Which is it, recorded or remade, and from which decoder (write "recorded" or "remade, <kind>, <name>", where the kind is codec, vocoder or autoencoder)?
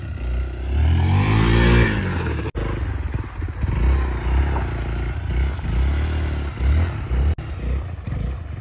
recorded